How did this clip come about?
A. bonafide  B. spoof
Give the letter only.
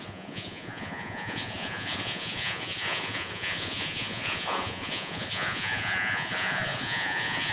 B